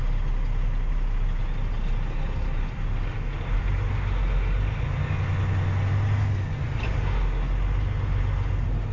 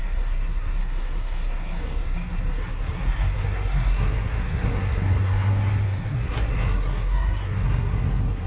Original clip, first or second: first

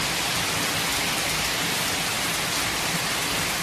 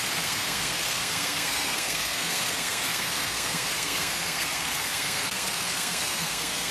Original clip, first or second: first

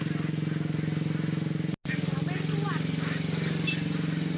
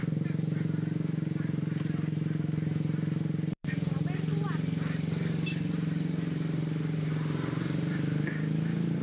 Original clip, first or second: first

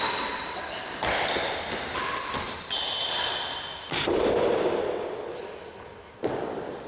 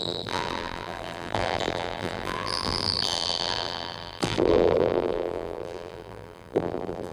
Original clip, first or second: first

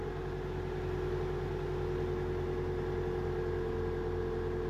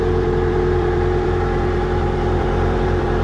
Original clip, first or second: first